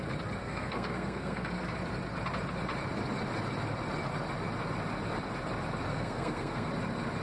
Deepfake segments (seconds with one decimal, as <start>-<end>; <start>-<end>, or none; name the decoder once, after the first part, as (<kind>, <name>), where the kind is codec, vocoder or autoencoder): 0.4-1.5 (codec, SNAC); 5.9-6.7